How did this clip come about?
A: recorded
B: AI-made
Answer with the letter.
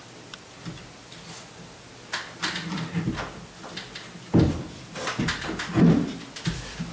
A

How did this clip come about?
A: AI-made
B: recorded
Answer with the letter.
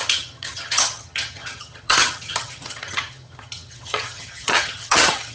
A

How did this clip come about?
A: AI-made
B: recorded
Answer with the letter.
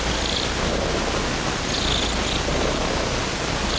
B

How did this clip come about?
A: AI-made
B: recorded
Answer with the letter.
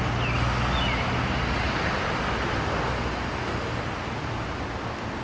B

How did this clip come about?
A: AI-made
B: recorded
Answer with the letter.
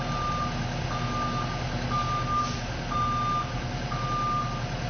B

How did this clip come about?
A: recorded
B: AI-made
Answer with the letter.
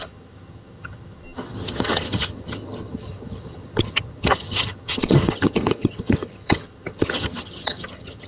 B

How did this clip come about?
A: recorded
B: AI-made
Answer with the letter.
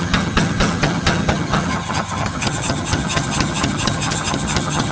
B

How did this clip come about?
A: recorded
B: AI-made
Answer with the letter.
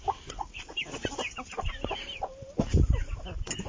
A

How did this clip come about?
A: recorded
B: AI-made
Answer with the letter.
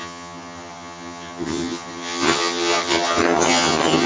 B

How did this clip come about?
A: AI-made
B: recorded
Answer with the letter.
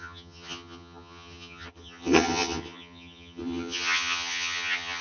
A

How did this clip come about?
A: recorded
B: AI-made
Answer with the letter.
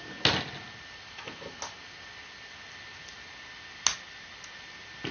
A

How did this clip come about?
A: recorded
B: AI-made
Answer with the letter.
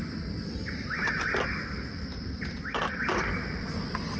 A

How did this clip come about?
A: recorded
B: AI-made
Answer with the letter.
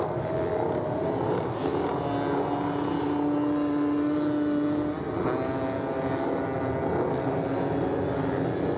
A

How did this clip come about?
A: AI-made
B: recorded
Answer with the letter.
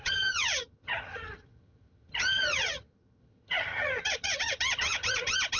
A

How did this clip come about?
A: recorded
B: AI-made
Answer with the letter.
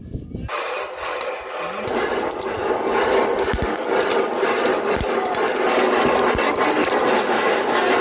A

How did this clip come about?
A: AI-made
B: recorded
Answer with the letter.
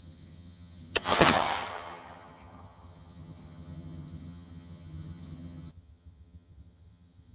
A